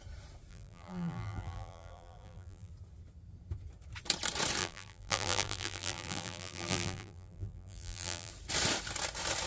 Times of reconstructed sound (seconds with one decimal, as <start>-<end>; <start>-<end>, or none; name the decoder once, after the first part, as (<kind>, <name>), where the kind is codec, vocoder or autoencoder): 0.5-2.7 (vocoder, BigVGAN v2); 4.6-8.3